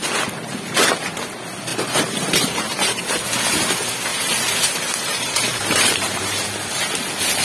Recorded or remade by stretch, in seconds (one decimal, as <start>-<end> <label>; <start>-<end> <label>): 0.0-1.7 recorded; 1.7-3.0 remade; 3.0-4.1 recorded; 4.1-6.3 remade; 6.3-7.4 recorded